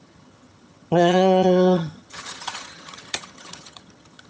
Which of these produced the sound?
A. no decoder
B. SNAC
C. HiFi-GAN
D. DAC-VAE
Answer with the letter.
C